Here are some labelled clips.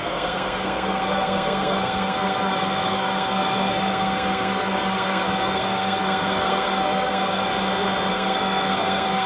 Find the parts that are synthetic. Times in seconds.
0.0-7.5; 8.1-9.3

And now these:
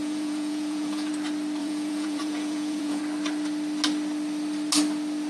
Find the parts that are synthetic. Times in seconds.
0.0-1.1; 1.6-3.0

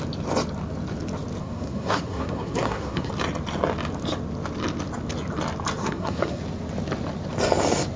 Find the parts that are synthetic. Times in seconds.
1.4-3.1; 5.8-6.4

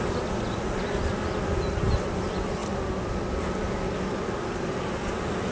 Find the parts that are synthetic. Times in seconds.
none

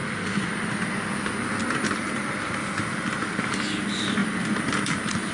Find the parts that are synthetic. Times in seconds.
2.1-4.2

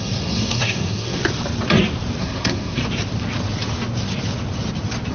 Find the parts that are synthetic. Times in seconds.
0.0-1.2; 2.2-2.8

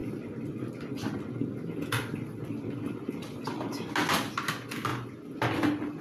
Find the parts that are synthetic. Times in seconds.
none

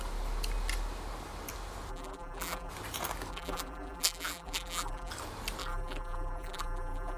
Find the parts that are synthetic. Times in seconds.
1.9-2.7; 3.3-5.1; 5.6-7.2